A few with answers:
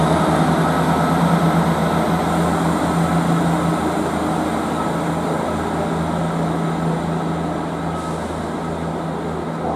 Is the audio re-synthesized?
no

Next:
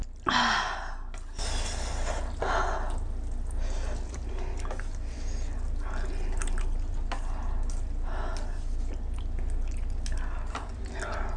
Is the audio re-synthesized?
no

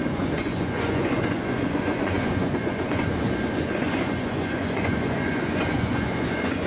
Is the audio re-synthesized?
yes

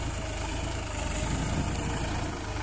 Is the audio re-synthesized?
no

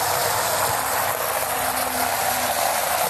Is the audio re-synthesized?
no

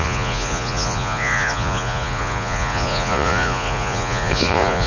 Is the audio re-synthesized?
yes